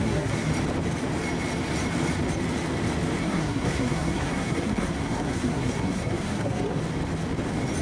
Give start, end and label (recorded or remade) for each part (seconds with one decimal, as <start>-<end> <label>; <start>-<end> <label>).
0.0-0.5 remade; 0.5-3.2 recorded; 3.2-6.8 remade; 6.8-7.8 recorded

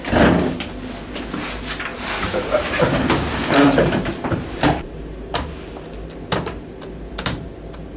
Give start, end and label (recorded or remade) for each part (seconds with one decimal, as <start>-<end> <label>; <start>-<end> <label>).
0.0-1.9 recorded; 1.9-5.3 remade; 5.3-8.0 recorded

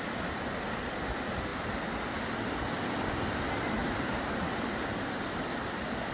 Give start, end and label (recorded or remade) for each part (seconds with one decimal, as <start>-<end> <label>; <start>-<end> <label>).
0.0-3.8 recorded; 3.8-4.7 remade; 4.7-6.1 recorded

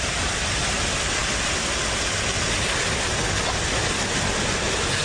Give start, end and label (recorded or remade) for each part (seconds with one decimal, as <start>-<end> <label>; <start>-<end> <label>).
0.0-5.0 recorded

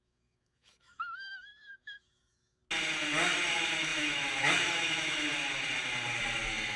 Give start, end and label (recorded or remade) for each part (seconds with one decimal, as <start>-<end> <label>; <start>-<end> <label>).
0.0-2.6 remade; 2.6-3.5 recorded; 3.5-5.3 remade; 5.3-6.8 recorded

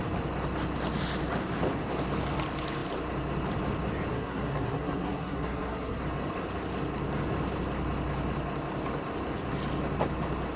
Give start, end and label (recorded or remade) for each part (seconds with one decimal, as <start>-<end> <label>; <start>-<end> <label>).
0.0-4.1 recorded; 4.1-6.0 remade; 6.0-10.6 recorded